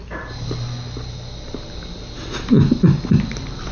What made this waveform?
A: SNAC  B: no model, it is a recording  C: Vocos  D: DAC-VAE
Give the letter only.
B